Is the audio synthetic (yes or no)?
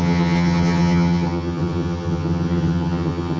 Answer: yes